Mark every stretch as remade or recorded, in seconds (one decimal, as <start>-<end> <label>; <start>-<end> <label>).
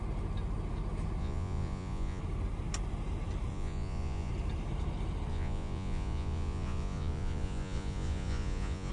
0.0-1.2 recorded; 1.2-2.2 remade; 2.2-3.5 recorded; 3.5-4.3 remade; 4.3-5.3 recorded; 5.3-8.9 remade